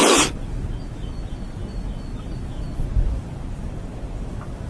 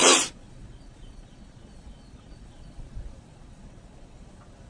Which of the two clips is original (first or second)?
first